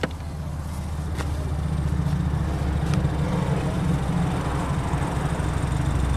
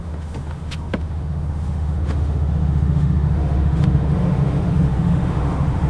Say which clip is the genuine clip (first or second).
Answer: first